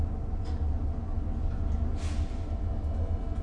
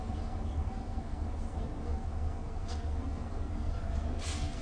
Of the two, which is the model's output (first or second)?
second